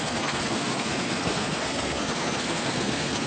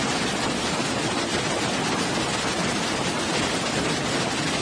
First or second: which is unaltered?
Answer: second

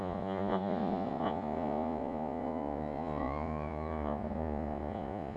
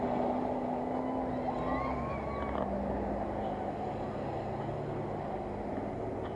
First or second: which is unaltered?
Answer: second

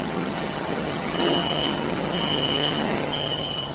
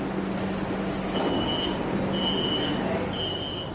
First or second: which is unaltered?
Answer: second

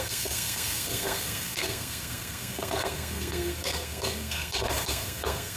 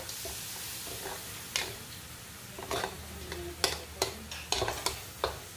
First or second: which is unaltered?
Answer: second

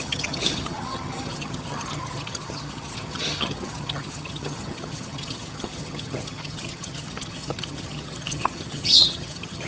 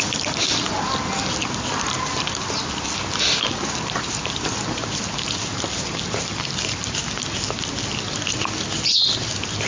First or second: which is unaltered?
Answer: second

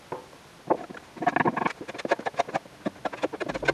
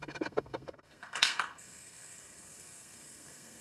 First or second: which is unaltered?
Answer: first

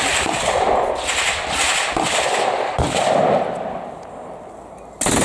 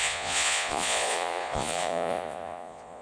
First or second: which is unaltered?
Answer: first